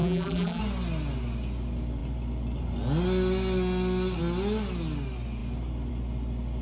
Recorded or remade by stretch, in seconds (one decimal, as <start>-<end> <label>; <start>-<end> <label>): 0.0-0.6 remade; 0.6-6.6 recorded